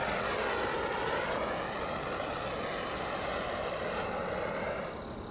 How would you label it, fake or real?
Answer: real